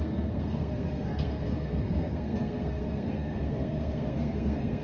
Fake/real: fake